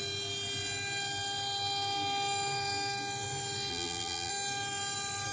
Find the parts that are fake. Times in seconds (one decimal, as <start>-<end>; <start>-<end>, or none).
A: 3.7-4.3